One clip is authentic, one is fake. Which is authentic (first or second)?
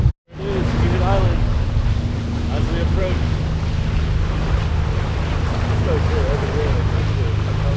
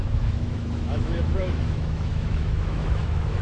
first